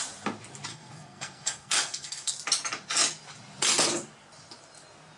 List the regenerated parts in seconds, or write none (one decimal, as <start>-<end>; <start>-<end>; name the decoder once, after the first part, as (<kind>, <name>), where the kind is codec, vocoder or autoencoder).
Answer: 0.7-2.3 (codec, SNAC)